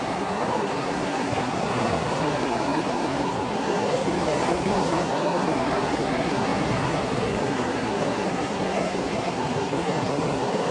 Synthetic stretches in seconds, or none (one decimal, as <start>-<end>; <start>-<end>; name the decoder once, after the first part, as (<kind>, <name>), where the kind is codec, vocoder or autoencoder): 0.0-10.7 (codec, SNAC)

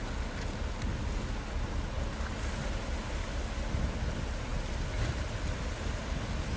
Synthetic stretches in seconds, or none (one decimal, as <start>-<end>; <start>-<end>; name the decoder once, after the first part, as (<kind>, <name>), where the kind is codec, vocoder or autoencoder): none

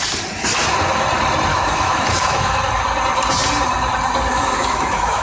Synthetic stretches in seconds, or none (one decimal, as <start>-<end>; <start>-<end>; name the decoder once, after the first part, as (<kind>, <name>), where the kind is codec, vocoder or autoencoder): 1.5-2.6 (autoencoder, DAC-VAE); 4.3-5.2

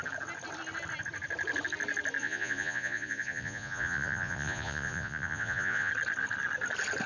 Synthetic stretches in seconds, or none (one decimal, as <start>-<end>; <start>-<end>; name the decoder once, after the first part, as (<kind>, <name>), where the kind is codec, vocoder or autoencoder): 2.2-5.9 (vocoder, Vocos)

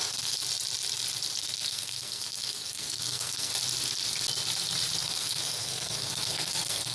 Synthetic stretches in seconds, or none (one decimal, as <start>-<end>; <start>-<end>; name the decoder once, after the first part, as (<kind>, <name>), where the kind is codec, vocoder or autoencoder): 0.0-0.4 (codec, SNAC); 1.4-3.5; 5.0-6.9